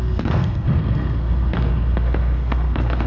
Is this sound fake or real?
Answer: fake